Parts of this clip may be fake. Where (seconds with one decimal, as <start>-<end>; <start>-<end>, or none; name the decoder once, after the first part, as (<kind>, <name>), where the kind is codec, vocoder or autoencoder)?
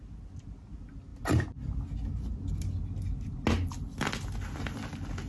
none